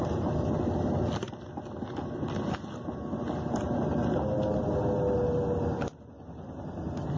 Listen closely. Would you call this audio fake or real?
real